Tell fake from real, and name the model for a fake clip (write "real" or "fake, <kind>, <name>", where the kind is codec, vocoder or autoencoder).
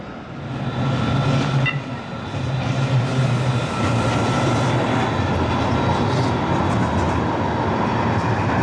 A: real